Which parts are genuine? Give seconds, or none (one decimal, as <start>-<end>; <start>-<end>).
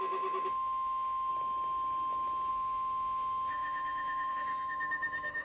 1.3-2.5